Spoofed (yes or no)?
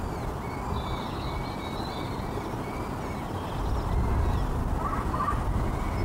no